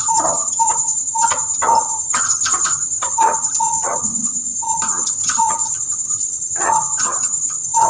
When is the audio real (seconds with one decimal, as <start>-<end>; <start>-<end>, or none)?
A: none